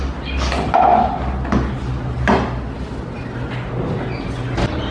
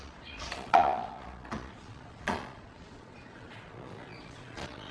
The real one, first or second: first